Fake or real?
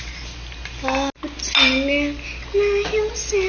real